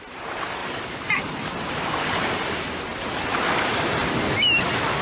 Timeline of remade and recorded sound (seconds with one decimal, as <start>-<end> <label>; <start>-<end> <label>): 0.0-0.6 recorded; 0.6-2.8 remade; 2.8-5.0 recorded